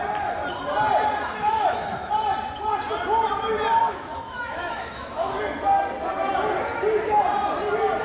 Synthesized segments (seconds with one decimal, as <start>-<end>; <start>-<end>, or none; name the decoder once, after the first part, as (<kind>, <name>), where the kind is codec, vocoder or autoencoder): 1.4-2.1 (autoencoder, DAC-VAE); 3.8-5.4